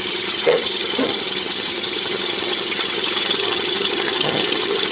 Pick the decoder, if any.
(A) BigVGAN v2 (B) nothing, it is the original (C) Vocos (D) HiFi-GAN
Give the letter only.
D